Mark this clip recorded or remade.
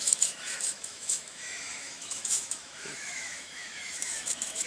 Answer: remade